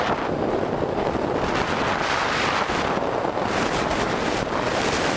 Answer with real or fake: real